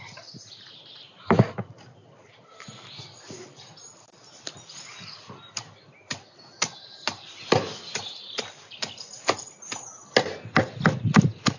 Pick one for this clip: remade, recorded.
recorded